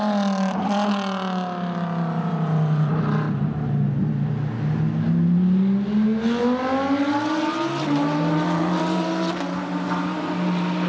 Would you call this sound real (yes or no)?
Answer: yes